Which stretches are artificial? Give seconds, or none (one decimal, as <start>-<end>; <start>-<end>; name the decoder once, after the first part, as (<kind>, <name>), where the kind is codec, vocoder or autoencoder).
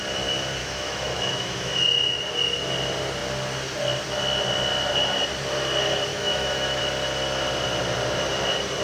0.6-2.2 (autoencoder, DAC-VAE); 6.1-6.8